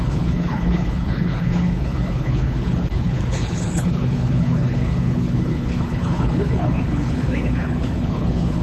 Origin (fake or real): fake